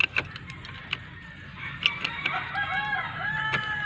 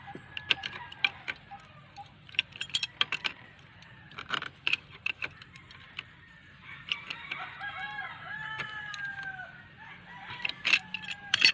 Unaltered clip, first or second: first